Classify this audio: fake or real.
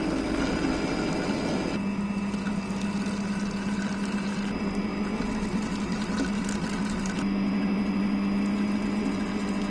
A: real